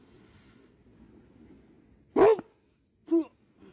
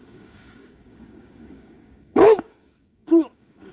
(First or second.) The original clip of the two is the first